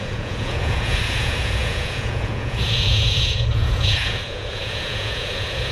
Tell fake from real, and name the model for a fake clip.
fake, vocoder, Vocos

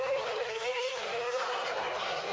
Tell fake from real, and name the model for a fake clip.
fake, codec, SNAC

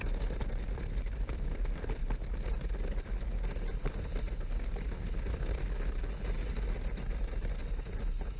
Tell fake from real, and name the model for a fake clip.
real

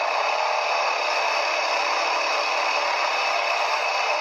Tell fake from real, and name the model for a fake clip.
real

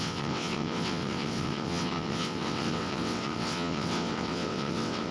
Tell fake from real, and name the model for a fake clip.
fake, vocoder, WaveNeXt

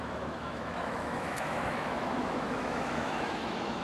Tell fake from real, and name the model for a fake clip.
fake, autoencoder, DAC-VAE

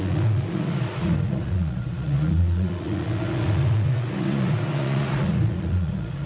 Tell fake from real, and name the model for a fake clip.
fake, vocoder, Vocos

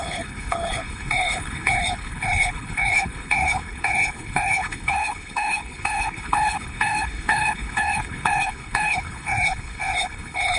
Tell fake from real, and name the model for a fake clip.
fake, codec, HILCodec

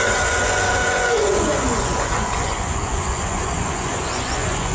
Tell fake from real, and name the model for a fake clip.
fake, vocoder, Vocos